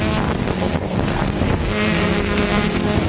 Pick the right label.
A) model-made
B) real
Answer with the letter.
A